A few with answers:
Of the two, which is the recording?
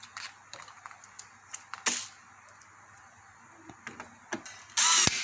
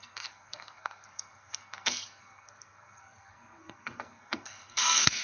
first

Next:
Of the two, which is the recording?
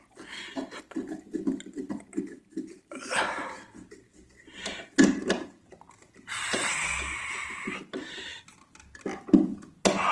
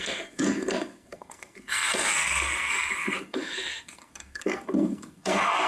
first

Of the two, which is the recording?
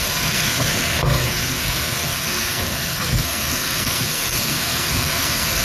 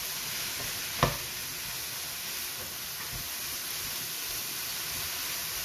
second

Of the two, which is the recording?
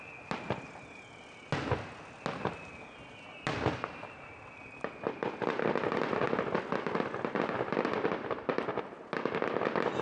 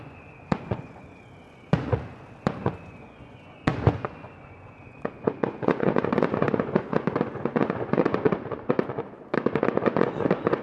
first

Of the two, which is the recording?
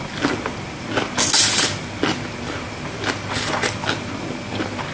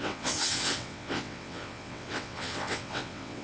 first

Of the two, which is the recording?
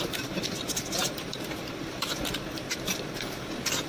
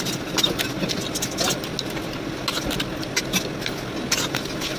second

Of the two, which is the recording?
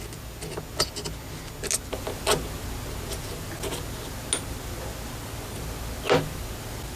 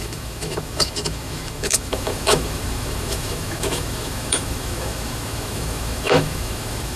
first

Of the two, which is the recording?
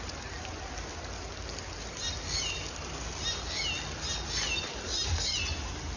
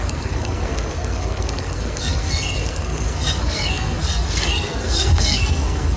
first